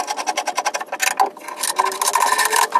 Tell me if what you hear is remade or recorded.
recorded